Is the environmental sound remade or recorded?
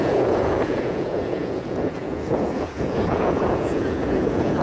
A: remade